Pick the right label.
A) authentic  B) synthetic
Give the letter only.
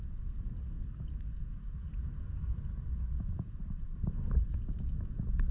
A